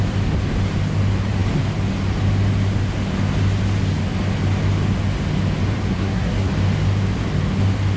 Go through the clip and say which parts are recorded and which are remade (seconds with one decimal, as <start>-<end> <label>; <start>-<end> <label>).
0.0-5.9 recorded; 5.9-6.5 remade; 6.5-8.0 recorded